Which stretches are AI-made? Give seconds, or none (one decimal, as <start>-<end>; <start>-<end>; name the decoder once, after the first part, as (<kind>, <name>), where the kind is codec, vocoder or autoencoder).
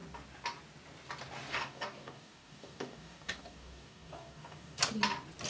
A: 1.5-4.8 (codec, DAC)